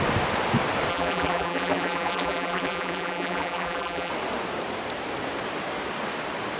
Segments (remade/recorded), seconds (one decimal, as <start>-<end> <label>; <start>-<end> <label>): 0.0-0.9 recorded; 0.9-4.1 remade; 4.1-6.6 recorded